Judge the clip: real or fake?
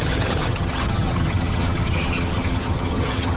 fake